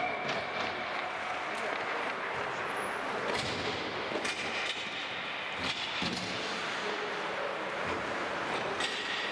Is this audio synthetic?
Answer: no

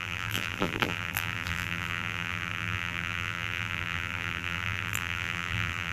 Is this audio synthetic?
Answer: yes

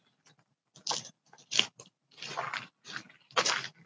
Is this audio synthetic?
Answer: yes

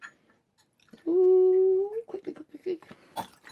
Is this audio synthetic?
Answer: no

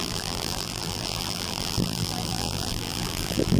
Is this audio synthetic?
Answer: yes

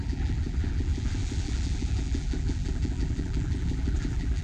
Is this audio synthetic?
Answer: yes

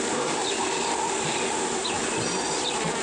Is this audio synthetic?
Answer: no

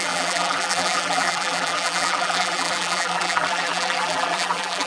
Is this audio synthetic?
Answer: yes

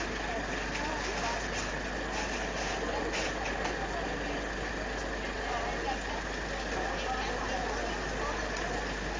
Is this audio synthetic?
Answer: no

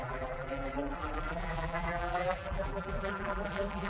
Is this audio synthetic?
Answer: yes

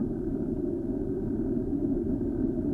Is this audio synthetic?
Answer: no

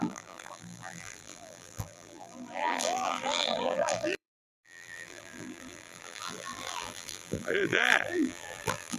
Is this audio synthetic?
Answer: yes